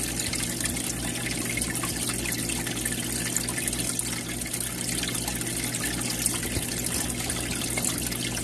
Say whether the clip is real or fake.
real